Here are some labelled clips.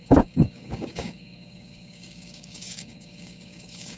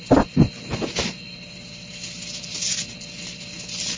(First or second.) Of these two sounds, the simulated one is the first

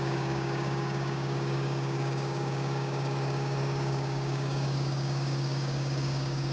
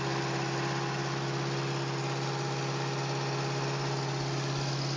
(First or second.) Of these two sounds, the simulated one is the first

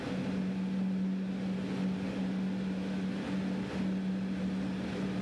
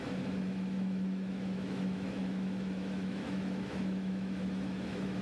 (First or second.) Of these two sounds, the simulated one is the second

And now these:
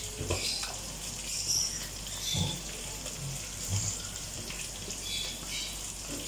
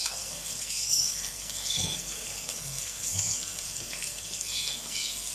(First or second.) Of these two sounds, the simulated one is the second